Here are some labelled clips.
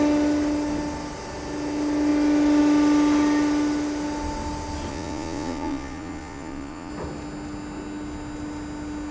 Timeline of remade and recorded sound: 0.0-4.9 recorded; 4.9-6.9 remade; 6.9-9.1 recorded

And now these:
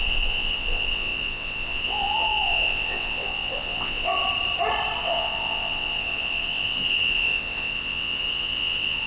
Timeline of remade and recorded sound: 0.0-4.2 remade; 4.2-5.0 recorded; 5.0-9.1 remade

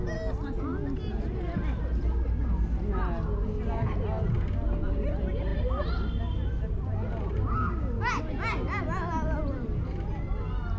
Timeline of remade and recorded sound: 0.0-10.8 recorded

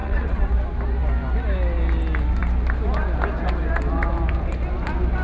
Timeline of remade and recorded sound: 0.0-0.5 remade; 0.5-5.2 recorded